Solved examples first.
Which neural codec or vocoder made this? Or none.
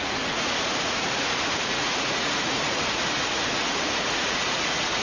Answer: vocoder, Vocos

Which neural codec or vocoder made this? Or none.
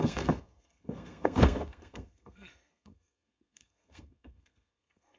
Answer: codec, SNAC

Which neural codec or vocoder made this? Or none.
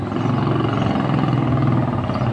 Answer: none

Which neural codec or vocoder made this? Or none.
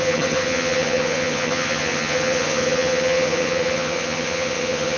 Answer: vocoder, HiFi-GAN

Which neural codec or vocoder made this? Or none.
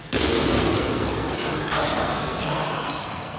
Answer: codec, SNAC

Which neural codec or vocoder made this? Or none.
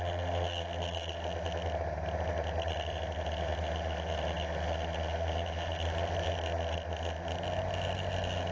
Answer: none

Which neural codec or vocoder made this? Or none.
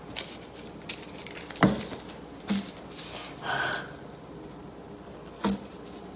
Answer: none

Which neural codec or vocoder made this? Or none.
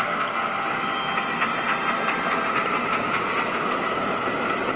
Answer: none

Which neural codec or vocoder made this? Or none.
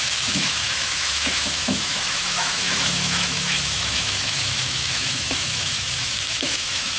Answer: autoencoder, DAC-VAE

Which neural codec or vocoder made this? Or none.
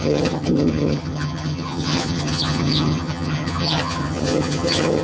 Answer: vocoder, HiFi-GAN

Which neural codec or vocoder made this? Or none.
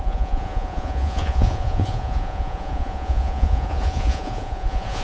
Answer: vocoder, Vocos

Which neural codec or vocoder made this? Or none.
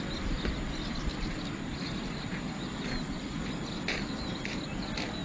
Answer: none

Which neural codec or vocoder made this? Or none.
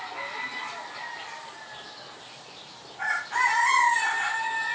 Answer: none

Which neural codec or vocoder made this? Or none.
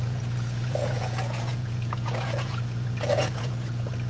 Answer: vocoder, Vocos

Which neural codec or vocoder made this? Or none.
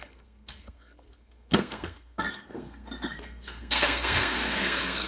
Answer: codec, SNAC